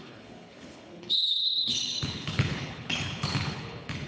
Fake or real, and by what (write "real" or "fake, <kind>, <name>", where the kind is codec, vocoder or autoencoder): fake, codec, HILCodec